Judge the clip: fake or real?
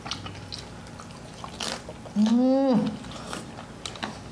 real